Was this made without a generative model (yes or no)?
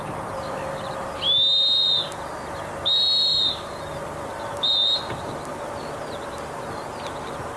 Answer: yes